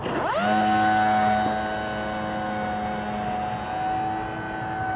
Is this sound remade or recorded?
recorded